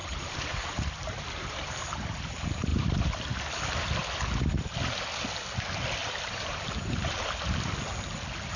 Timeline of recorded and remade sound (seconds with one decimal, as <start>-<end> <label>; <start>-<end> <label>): 0.0-2.2 remade; 2.2-2.7 recorded; 2.7-3.4 remade; 3.4-6.0 recorded; 6.0-7.3 remade; 7.3-8.6 recorded